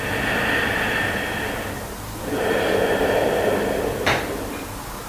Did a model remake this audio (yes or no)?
no